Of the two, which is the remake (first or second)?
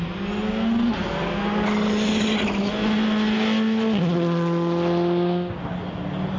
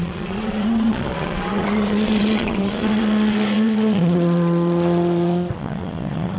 second